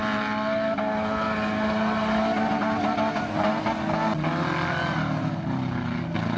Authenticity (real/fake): real